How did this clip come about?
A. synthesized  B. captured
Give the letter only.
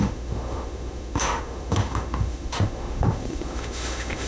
A